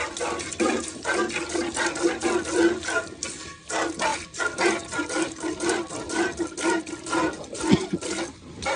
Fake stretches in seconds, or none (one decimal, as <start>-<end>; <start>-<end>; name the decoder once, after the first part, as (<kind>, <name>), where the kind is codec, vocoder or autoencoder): none